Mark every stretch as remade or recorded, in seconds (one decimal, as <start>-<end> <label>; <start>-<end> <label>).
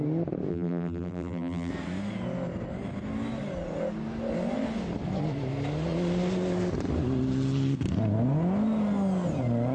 0.0-0.5 recorded; 0.5-1.7 remade; 1.7-9.7 recorded